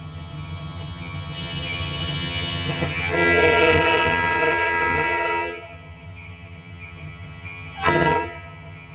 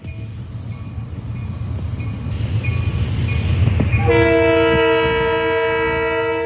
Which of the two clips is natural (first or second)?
second